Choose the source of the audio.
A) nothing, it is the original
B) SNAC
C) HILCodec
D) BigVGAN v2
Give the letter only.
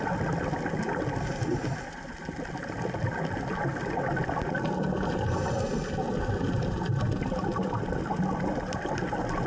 A